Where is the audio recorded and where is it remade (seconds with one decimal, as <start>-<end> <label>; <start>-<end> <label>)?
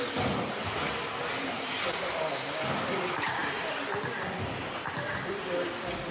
0.0-6.1 recorded